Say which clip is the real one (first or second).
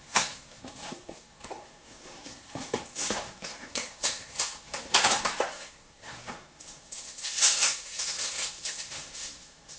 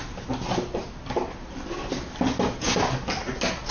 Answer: second